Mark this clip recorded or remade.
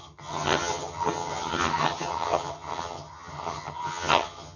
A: remade